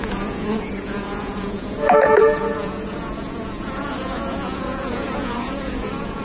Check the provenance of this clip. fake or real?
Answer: fake